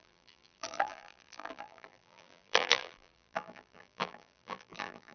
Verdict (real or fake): fake